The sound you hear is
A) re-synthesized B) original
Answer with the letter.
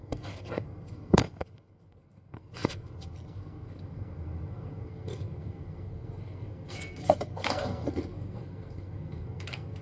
A